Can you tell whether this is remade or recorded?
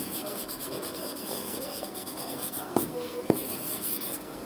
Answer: remade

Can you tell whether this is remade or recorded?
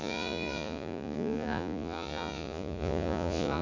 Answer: remade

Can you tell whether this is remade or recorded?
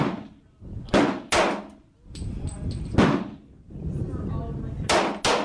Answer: recorded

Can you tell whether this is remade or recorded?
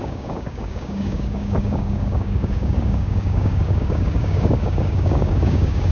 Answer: remade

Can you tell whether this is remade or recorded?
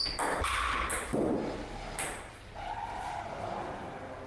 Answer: recorded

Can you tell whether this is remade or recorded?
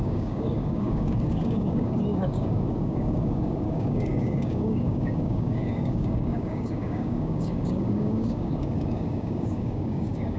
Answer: remade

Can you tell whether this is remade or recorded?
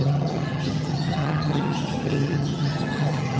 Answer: remade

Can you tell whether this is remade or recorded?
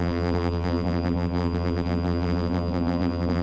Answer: remade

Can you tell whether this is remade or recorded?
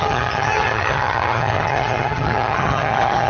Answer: remade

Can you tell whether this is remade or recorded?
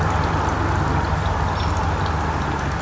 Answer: recorded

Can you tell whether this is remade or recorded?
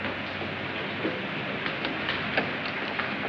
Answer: recorded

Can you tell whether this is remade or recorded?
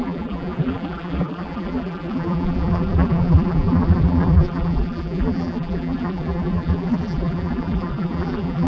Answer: remade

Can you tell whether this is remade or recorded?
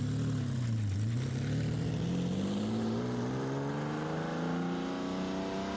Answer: recorded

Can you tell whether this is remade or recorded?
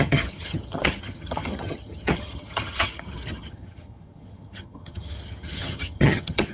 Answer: remade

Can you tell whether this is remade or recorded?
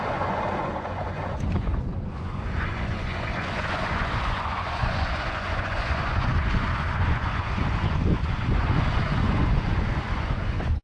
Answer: remade